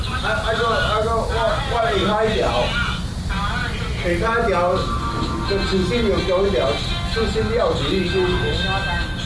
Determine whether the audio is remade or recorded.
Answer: recorded